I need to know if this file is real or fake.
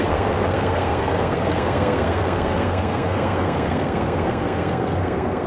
fake